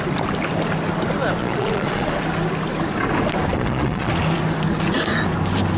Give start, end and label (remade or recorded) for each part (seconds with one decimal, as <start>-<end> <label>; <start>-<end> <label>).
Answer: 0.0-1.4 recorded; 1.4-2.1 remade; 2.1-3.5 recorded; 3.5-4.1 remade; 4.1-5.8 recorded